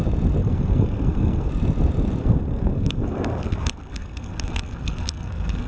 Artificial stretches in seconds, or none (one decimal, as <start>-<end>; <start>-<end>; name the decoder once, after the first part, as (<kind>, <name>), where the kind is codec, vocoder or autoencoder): 0.4-1.5 (codec, SNAC); 2.2-5.7